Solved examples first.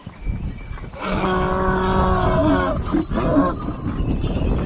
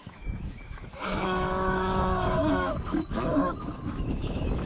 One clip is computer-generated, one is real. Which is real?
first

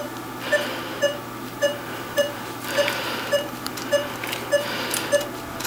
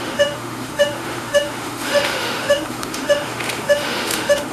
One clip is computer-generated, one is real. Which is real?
first